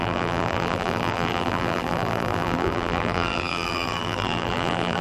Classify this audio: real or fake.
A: fake